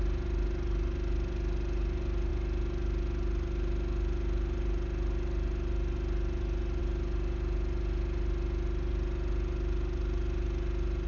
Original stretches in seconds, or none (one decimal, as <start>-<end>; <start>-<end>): 0.0-11.1